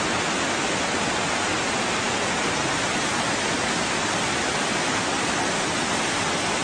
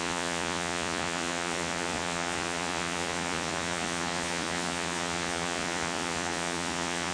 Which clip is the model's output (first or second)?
second